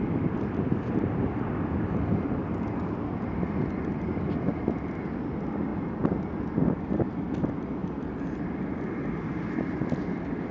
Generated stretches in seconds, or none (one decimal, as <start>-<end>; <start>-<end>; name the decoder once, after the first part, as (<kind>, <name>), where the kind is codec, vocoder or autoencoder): none